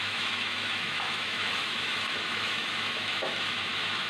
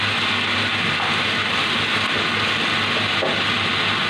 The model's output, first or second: first